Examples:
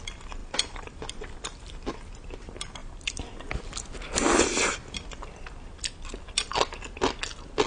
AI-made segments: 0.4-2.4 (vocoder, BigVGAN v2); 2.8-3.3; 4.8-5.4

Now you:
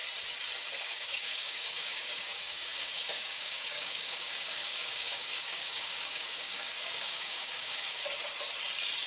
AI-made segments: 0.8-8.0 (codec, DAC)

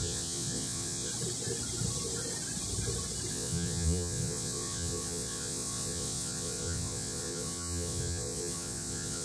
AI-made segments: 0.0-1.1 (vocoder, Vocos); 3.3-9.2

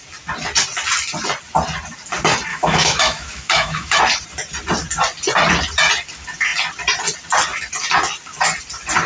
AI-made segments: 2.5-4.0 (autoencoder, DAC-VAE)